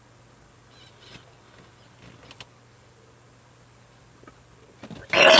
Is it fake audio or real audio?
real